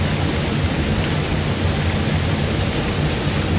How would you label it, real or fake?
real